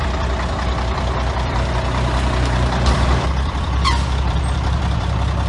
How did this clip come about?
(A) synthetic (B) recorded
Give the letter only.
A